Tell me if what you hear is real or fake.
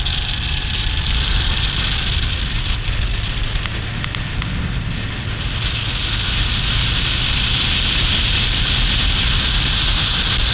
real